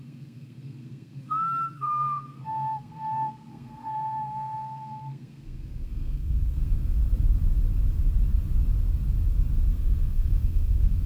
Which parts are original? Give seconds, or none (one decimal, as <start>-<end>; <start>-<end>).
7.0-9.7